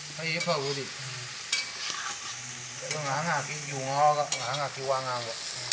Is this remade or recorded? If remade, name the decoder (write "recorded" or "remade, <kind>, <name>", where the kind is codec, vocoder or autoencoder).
recorded